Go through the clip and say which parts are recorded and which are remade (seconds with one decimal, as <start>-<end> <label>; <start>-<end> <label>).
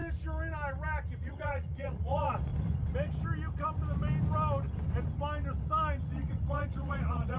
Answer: 0.0-1.2 recorded; 1.2-2.5 remade; 2.5-6.0 recorded; 6.0-7.4 remade